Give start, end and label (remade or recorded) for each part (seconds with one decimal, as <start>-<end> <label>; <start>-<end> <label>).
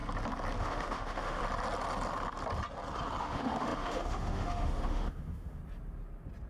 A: 0.0-0.6 recorded; 0.6-1.4 remade; 1.4-3.2 recorded; 3.2-5.6 remade; 5.6-6.5 recorded